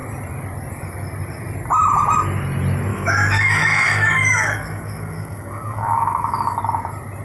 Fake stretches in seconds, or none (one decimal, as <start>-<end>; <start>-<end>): 2.9-6.6